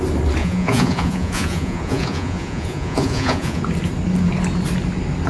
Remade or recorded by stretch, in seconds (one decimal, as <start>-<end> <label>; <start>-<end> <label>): 0.0-0.4 recorded; 0.4-3.6 remade; 3.6-5.3 recorded